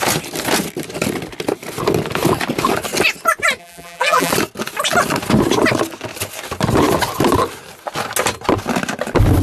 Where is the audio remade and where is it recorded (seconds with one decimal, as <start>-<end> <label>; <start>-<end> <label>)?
0.0-3.6 recorded; 3.6-4.3 remade; 4.3-9.4 recorded